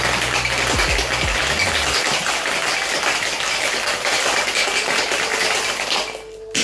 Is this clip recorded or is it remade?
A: recorded